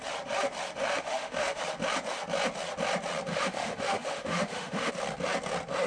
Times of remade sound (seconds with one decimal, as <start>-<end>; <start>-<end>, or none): 0.9-1.6; 3.3-4.9